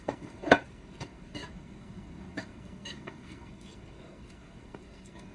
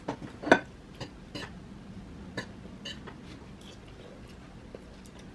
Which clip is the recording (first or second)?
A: second